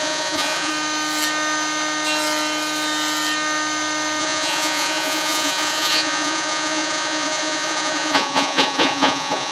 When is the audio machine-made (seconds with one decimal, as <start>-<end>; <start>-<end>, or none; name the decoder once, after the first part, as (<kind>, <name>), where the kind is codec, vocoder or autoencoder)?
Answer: 0.0-0.7 (vocoder, Vocos); 4.2-9.5